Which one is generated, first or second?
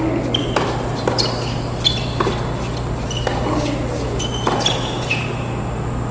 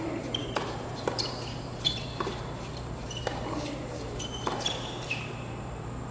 second